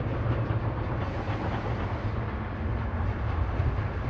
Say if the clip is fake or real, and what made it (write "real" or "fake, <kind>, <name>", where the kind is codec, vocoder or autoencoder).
real